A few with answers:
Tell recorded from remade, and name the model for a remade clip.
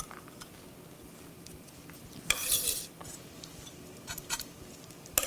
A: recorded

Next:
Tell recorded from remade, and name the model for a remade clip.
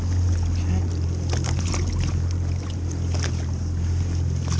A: recorded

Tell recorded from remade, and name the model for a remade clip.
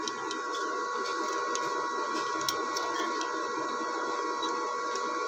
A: recorded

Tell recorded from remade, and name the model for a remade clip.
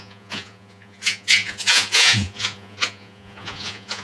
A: remade, vocoder, Vocos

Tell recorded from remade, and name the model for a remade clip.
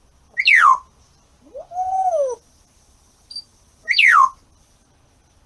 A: recorded